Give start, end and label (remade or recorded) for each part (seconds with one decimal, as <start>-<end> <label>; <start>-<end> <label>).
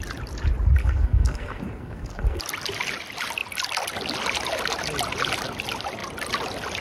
0.0-0.8 recorded; 0.8-2.4 remade; 2.4-6.8 recorded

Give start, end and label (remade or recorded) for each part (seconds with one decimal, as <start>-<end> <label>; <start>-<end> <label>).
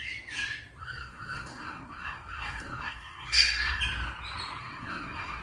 0.0-0.8 recorded; 0.8-3.8 remade; 3.8-4.6 recorded; 4.6-5.4 remade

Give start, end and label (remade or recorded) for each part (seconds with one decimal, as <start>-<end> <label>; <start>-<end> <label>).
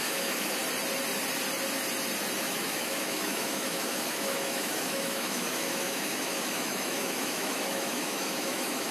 0.0-0.6 remade; 0.6-2.4 recorded; 2.4-8.9 remade